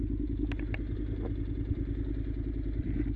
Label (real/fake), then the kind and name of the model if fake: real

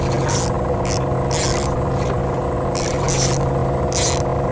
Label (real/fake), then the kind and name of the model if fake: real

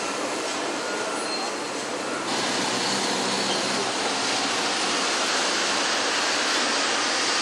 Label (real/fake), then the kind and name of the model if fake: real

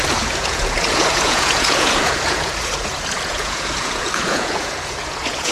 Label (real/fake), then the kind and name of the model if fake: fake, vocoder, Vocos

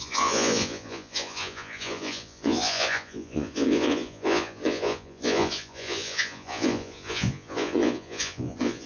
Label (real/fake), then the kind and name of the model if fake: fake, vocoder, Vocos